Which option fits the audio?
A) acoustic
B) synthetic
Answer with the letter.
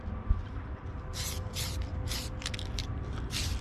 B